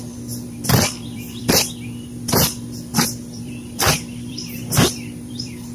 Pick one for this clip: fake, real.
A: fake